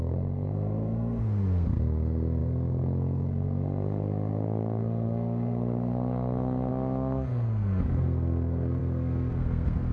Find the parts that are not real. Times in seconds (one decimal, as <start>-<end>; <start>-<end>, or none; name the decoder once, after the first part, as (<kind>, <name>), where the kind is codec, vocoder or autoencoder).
0.0-9.9 (codec, SNAC)